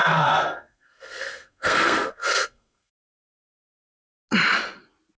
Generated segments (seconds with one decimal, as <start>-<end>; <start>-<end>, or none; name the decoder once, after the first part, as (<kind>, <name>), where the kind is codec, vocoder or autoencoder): 0.0-2.9 (codec, SNAC)